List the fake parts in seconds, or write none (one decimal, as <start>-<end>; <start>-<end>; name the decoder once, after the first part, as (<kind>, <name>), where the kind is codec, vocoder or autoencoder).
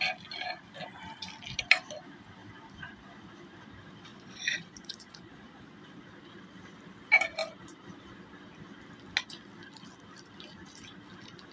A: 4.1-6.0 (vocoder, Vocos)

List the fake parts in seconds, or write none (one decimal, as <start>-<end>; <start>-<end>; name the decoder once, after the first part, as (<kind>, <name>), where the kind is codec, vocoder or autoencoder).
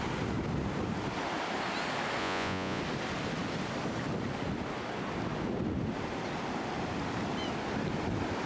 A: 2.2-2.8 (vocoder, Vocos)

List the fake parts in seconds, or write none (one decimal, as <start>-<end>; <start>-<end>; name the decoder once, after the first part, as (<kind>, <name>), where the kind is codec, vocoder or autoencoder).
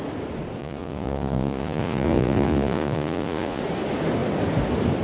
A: 0.6-3.6 (vocoder, Vocos)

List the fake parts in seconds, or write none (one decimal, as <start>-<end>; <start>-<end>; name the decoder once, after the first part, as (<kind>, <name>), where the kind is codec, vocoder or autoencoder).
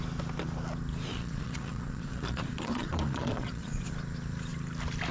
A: 1.1-3.9 (vocoder, Vocos)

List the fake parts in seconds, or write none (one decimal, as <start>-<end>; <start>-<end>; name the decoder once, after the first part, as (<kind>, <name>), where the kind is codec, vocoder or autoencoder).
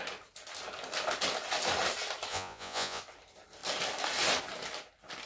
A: 2.3-3.0 (vocoder, Vocos)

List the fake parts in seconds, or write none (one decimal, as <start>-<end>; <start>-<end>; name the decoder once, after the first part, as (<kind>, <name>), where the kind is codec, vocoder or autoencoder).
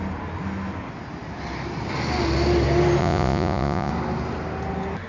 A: 3.0-3.9 (vocoder, Vocos)